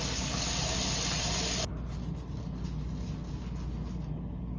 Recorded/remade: recorded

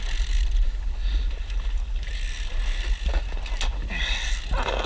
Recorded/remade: recorded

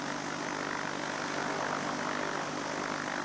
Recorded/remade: recorded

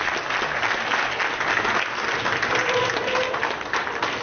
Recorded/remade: recorded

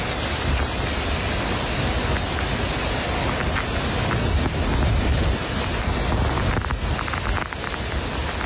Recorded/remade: recorded